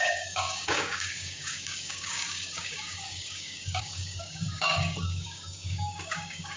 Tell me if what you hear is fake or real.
fake